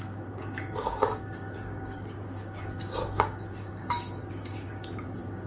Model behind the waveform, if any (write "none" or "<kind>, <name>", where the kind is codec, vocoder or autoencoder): codec, DAC